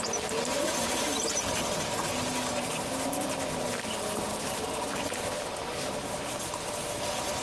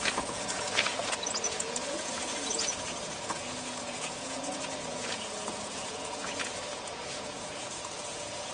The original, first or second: first